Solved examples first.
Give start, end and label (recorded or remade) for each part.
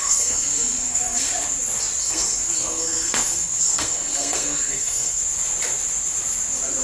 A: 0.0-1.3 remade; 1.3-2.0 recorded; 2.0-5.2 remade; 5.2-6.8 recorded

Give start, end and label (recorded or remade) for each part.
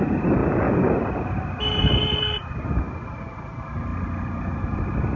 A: 0.0-5.2 recorded